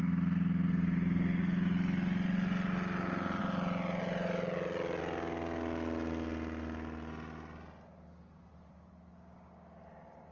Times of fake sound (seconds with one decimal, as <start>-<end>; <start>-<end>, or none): none